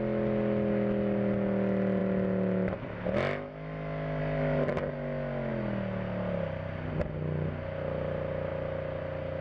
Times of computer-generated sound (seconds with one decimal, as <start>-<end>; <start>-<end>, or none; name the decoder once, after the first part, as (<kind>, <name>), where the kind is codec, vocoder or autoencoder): none